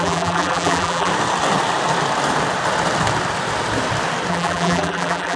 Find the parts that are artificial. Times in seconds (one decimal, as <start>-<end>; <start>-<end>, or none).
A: 0.0-1.1; 4.3-5.4